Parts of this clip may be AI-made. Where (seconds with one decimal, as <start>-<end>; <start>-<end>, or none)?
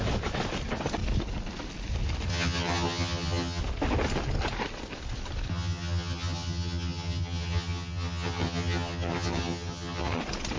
2.3-3.6; 5.5-10.2